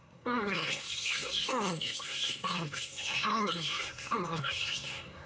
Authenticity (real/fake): fake